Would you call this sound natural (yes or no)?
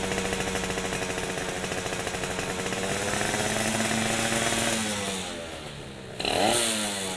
yes